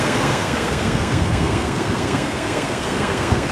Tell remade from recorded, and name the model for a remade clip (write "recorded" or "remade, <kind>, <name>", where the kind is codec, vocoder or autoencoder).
remade, codec, SNAC